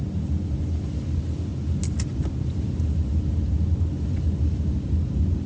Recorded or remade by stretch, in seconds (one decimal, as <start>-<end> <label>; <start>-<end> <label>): 0.0-5.5 recorded